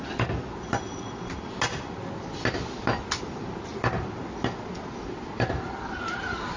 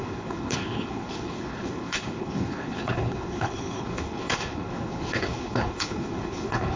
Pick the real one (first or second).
first